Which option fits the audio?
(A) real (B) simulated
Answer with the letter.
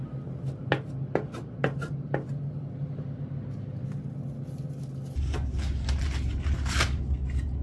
A